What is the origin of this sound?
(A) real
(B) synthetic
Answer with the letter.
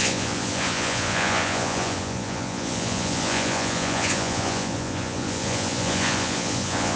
B